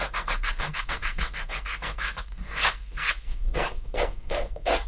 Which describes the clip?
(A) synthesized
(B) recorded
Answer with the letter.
A